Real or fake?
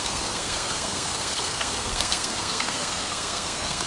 fake